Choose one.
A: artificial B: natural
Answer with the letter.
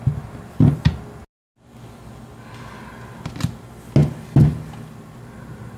B